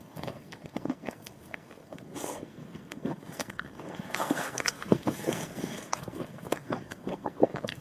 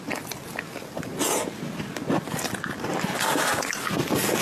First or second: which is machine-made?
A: first